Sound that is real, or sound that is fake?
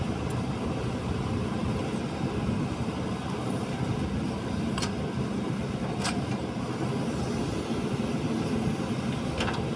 real